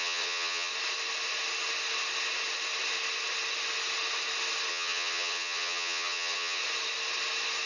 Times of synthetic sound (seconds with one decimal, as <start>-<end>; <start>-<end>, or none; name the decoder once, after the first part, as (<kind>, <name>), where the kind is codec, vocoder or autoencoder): 0.0-0.7 (vocoder, HiFi-GAN); 4.7-6.6